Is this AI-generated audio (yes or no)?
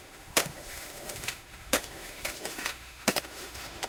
yes